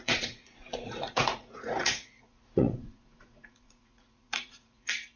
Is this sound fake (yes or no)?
yes